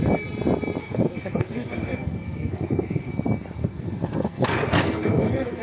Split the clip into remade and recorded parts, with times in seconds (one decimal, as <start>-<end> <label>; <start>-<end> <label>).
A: 0.0-0.8 recorded; 0.8-3.1 remade; 3.1-3.6 recorded; 3.6-5.6 remade